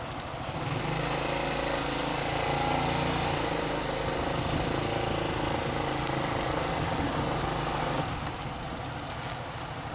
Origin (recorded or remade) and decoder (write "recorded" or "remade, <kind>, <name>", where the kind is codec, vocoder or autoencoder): recorded